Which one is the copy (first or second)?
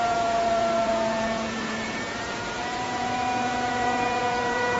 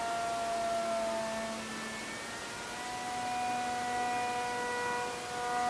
first